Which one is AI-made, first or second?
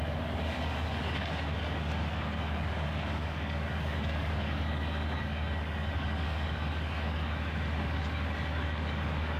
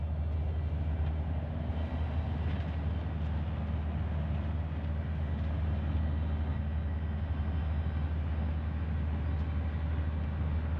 first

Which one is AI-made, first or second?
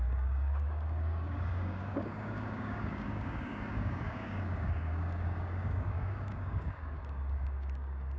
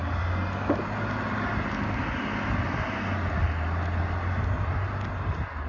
first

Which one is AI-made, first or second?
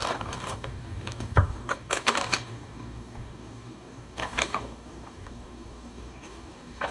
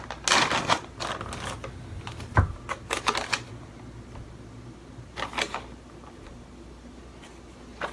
first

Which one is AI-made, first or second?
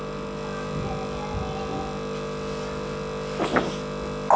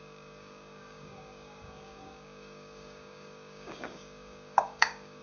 second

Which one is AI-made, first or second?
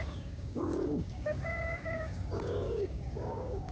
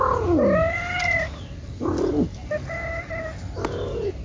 first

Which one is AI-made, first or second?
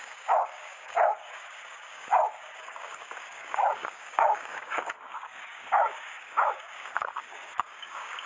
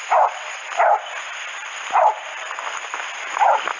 first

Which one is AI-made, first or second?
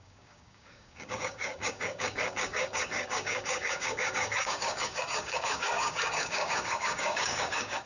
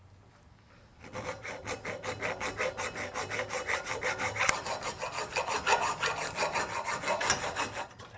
first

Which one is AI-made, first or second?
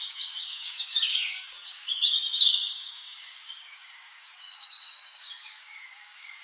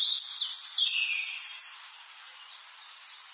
first